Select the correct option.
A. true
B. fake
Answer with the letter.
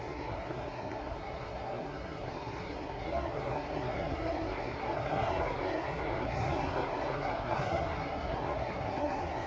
B